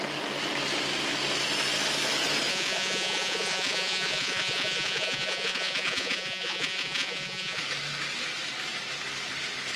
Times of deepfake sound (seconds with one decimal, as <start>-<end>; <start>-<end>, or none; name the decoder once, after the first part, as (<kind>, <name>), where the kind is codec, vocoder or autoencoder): 2.5-7.6 (vocoder, Vocos)